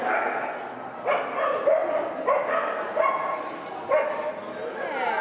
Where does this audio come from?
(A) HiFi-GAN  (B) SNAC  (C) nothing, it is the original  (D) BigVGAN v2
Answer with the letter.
C